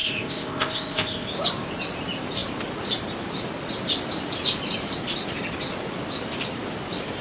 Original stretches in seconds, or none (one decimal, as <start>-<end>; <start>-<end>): 1.3-7.2